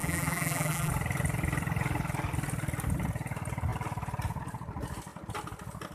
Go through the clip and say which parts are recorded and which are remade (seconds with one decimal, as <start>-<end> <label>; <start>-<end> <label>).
0.0-0.9 remade; 0.9-5.9 recorded